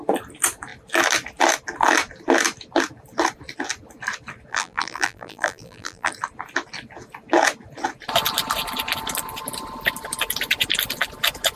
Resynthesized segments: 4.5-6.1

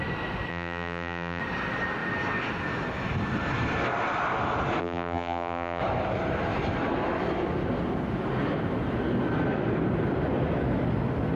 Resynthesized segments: 0.5-1.4; 4.8-5.8